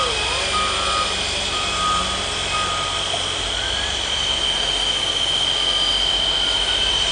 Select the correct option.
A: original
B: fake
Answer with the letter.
A